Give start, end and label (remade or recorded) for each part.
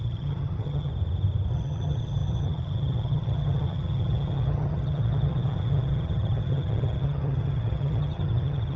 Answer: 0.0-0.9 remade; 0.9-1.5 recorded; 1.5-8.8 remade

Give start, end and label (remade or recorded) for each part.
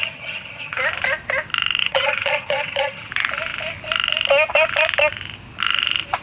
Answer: 0.0-0.8 remade; 0.8-1.8 recorded; 1.8-3.1 remade; 3.1-6.2 recorded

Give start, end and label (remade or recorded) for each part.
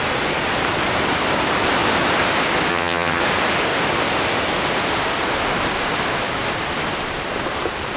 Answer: 0.0-2.7 recorded; 2.7-3.2 remade; 3.2-8.0 recorded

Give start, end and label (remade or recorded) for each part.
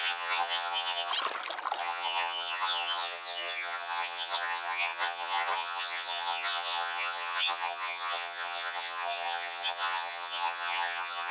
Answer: 0.0-1.1 remade; 1.1-1.8 recorded; 1.8-11.3 remade